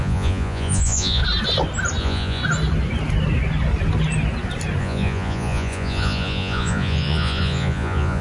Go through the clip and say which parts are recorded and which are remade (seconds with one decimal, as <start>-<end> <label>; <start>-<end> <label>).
0.0-1.2 remade; 1.2-2.0 recorded; 2.0-2.4 remade; 2.4-4.8 recorded; 4.8-8.2 remade